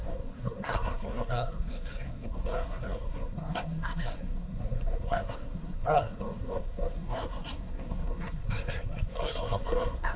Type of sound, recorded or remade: remade